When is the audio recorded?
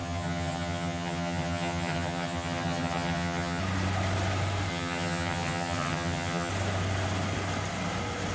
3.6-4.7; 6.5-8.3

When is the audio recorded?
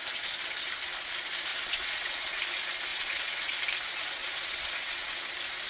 0.0-1.5; 2.4-2.9; 3.5-4.2; 5.3-5.7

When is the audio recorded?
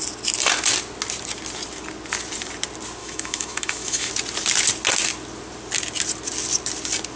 0.0-3.0; 4.1-7.2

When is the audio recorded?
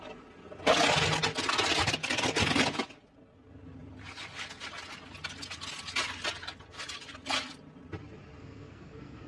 0.0-8.4